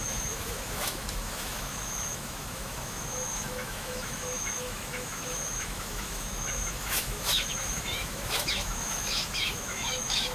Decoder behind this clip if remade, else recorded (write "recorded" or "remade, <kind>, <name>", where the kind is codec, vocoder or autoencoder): remade, autoencoder, DAC-VAE